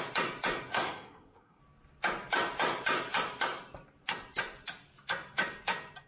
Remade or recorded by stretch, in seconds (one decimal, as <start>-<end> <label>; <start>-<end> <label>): 0.0-0.7 recorded; 0.7-1.6 remade; 1.6-6.1 recorded